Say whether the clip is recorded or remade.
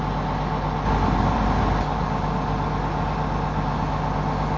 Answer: recorded